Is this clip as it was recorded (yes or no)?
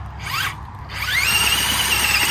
yes